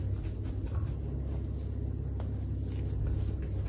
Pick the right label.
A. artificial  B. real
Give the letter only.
B